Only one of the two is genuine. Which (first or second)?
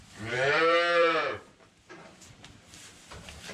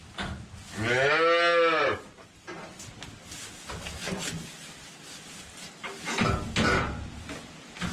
second